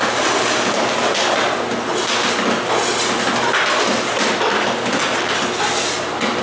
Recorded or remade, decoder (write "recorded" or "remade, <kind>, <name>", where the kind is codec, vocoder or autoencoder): recorded